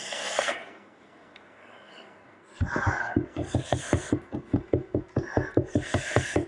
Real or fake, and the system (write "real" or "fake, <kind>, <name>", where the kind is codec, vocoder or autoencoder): fake, codec, SNAC